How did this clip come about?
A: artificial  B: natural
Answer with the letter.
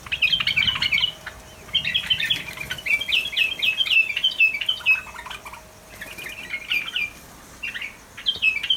B